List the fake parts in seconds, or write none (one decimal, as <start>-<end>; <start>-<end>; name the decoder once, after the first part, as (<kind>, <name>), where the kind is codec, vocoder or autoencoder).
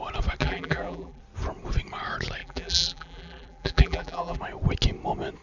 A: 0.4-1.2 (vocoder, BigVGAN v2); 2.4-4.4